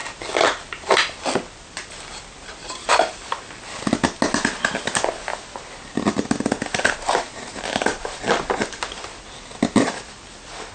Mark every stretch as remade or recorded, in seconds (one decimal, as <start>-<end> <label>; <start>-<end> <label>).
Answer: 0.0-10.7 recorded